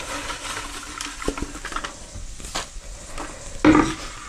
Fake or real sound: real